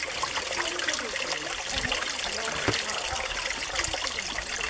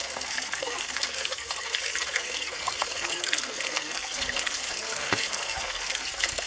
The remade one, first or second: second